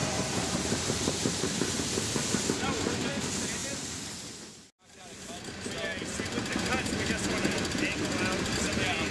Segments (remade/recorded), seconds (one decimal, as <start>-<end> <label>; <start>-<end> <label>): 0.0-2.4 remade; 2.4-9.1 recorded